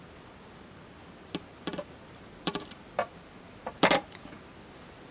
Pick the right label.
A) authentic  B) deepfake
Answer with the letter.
A